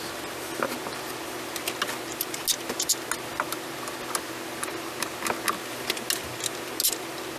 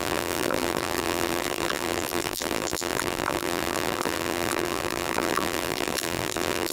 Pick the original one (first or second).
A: first